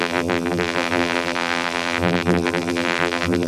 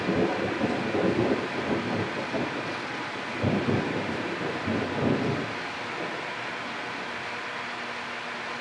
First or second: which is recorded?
second